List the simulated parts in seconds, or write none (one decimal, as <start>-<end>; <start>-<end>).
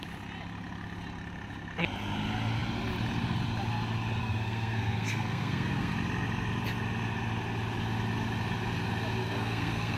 4.2-5.9; 9.2-10.0